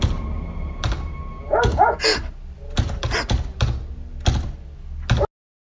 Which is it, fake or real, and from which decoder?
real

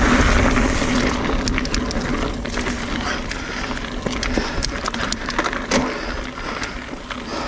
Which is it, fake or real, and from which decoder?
real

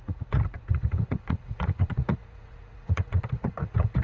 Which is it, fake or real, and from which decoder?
fake, vocoder, Vocos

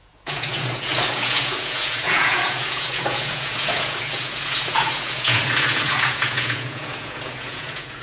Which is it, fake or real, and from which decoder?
fake, vocoder, Vocos